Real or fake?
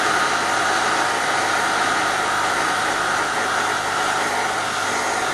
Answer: real